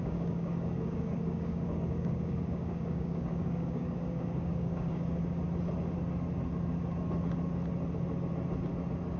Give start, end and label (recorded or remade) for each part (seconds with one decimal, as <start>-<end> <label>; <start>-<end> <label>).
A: 0.0-5.2 remade; 5.2-9.2 recorded